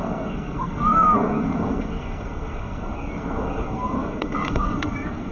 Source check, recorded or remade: remade